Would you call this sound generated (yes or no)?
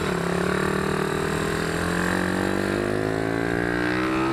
no